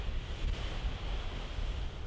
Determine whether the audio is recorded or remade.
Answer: recorded